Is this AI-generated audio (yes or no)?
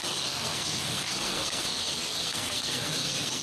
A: yes